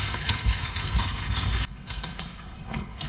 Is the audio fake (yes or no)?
yes